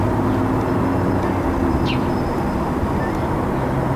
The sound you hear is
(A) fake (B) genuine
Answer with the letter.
B